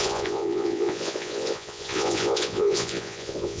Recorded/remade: remade